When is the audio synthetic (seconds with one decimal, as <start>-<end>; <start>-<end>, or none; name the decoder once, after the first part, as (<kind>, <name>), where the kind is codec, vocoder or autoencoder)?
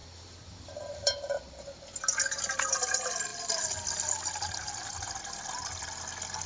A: 0.0-1.4 (vocoder, BigVGAN v2)